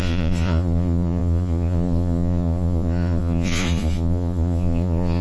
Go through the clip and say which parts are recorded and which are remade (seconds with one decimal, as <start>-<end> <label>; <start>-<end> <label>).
0.0-5.2 remade

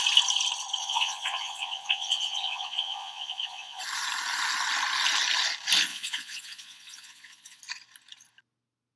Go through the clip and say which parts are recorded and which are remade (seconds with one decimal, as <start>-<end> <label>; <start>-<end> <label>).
0.0-0.8 recorded; 0.8-3.8 remade; 3.8-5.9 recorded; 5.9-7.6 remade; 7.6-9.0 recorded

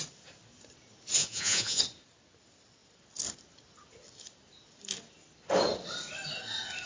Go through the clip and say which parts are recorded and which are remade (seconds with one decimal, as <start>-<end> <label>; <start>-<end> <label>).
0.0-1.2 recorded; 1.2-1.8 remade; 1.8-6.9 recorded

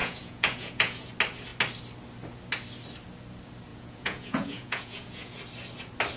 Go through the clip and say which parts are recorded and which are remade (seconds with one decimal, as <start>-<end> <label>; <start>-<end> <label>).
0.0-1.1 remade; 1.1-3.7 recorded; 3.7-5.3 remade; 5.3-6.2 recorded

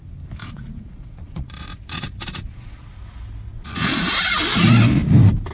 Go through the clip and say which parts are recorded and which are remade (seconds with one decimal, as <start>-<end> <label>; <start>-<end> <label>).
0.0-0.4 recorded; 0.4-2.9 remade; 2.9-3.5 recorded; 3.5-4.0 remade; 4.0-5.5 recorded

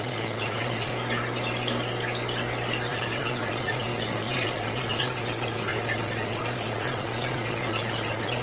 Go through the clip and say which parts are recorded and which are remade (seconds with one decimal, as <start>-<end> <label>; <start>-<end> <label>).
0.0-0.9 remade; 0.9-2.9 recorded; 2.9-8.4 remade

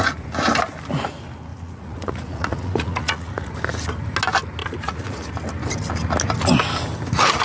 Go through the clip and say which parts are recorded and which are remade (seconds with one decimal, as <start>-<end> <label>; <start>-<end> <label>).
0.0-1.5 recorded; 1.5-3.5 remade; 3.5-4.6 recorded; 4.6-5.3 remade; 5.3-7.4 recorded

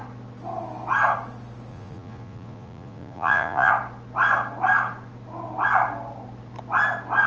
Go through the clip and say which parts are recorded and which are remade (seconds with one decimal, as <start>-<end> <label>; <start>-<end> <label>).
0.0-1.7 recorded; 1.7-3.7 remade; 3.7-7.3 recorded